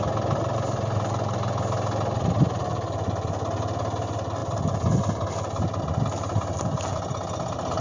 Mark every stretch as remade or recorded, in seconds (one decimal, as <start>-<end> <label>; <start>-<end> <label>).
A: 0.0-7.8 recorded

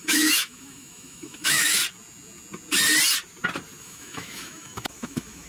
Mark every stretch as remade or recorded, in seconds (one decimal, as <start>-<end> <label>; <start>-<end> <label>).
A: 0.0-1.8 remade; 1.8-3.8 recorded; 3.8-5.5 remade